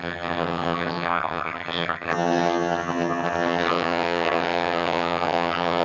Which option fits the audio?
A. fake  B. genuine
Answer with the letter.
A